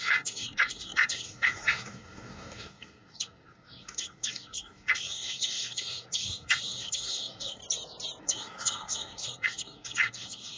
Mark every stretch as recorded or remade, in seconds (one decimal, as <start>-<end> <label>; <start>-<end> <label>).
0.0-7.6 remade; 7.6-8.2 recorded; 8.2-10.6 remade